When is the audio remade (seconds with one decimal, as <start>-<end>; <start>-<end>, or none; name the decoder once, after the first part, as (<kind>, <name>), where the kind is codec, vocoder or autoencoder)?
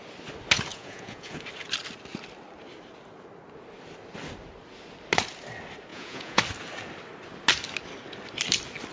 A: 0.7-1.3 (vocoder, Vocos); 5.9-6.4